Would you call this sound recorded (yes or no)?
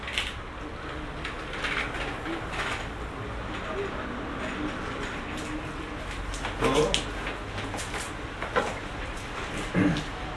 yes